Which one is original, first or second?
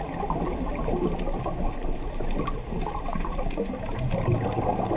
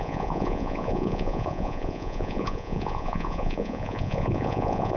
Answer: first